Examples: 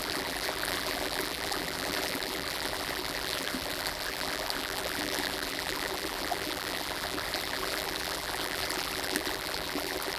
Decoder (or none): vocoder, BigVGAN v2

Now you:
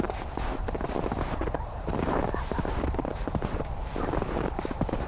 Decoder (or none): vocoder, BigVGAN v2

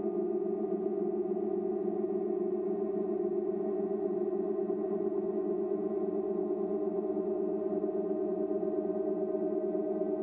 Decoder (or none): none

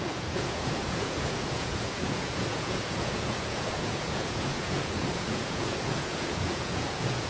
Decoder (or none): vocoder, Vocos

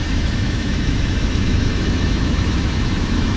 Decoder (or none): autoencoder, DAC-VAE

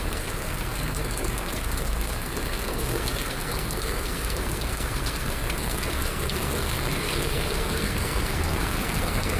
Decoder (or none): codec, SNAC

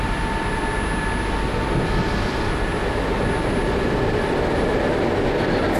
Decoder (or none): none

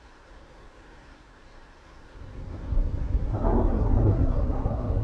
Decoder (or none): codec, SNAC